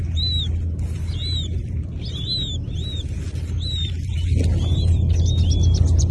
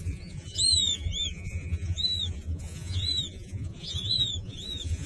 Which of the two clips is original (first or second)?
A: first